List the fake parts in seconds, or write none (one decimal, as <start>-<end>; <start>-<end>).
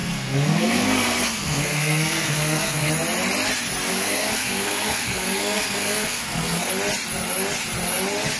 0.0-2.9; 3.9-6.7